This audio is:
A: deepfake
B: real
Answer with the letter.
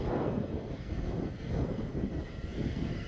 A